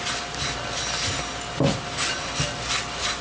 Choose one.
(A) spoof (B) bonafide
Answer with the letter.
B